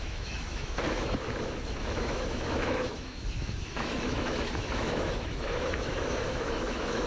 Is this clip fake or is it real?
fake